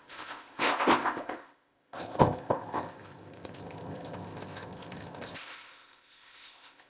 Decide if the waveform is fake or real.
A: fake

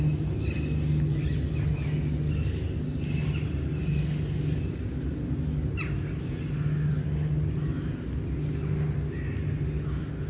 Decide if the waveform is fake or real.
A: real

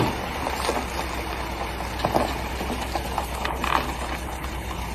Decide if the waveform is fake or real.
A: real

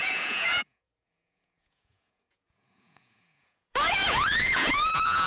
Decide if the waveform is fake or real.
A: fake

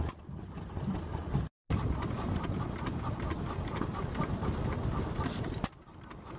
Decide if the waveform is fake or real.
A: real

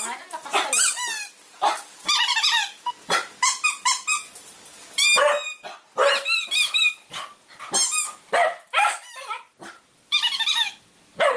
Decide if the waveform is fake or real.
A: real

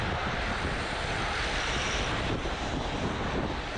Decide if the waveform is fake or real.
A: real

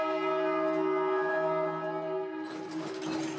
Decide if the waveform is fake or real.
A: real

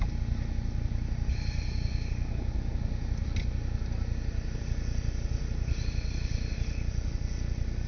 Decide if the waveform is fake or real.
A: real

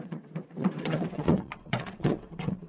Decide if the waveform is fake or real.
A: fake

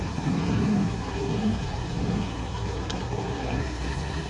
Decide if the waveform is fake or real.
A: fake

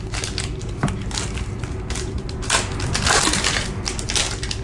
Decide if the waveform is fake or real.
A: real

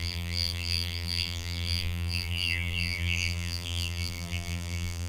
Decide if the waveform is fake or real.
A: fake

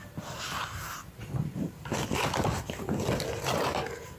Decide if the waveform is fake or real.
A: real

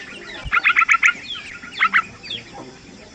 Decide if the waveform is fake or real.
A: real